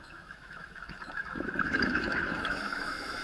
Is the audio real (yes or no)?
no